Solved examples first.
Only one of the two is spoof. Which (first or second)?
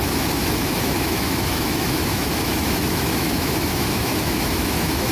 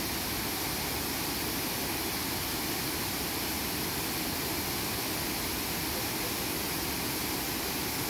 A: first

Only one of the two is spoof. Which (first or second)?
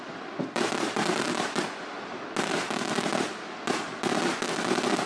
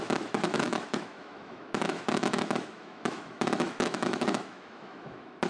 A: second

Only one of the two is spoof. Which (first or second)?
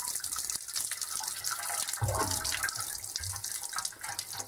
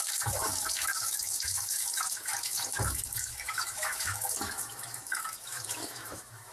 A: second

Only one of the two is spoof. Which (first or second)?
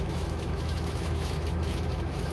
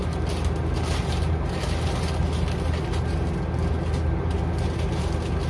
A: first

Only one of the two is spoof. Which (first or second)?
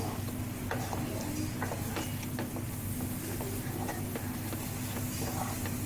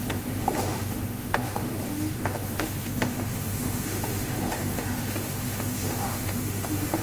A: second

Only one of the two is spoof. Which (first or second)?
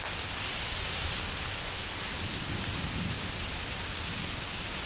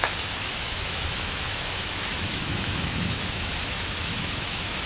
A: second